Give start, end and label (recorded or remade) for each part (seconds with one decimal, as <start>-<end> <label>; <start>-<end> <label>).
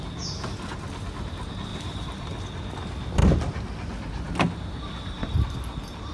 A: 0.0-6.1 recorded